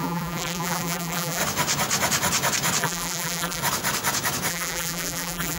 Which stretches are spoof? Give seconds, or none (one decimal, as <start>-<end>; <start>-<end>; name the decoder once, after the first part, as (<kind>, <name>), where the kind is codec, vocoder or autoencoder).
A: 0.0-1.4 (vocoder, BigVGAN v2); 2.8-3.6; 4.5-5.6

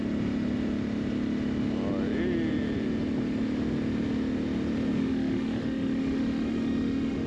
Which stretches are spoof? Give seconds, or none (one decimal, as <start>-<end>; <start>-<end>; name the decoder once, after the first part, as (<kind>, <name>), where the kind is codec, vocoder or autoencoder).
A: 5.0-7.3 (autoencoder, DAC-VAE)

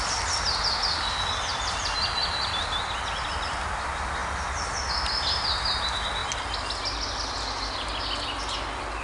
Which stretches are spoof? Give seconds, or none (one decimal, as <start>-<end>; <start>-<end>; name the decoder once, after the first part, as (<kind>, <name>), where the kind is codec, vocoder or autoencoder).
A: none

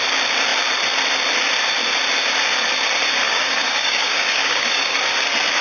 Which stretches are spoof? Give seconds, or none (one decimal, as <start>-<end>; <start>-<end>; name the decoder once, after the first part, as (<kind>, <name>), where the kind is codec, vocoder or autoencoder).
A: 3.2-5.0 (codec, DAC)